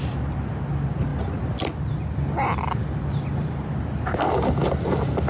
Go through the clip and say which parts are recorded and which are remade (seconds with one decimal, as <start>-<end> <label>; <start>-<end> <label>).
0.0-5.3 recorded